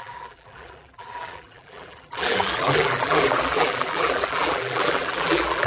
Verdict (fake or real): fake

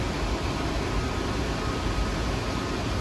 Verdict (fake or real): real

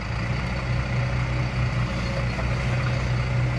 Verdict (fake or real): real